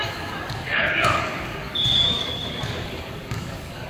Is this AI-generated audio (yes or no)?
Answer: yes